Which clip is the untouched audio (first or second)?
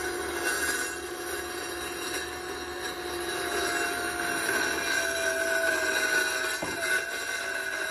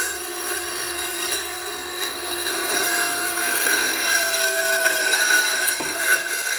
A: first